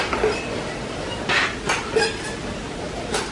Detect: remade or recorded recorded